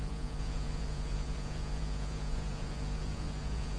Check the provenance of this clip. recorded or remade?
remade